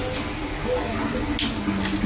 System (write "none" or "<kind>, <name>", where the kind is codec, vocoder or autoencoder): none